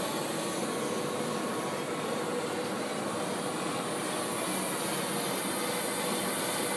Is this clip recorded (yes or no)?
yes